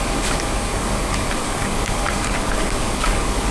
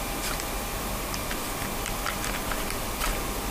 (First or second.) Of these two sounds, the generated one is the first